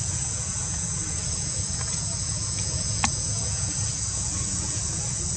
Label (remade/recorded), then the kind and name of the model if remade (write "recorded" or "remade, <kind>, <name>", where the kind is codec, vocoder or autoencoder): remade, vocoder, Vocos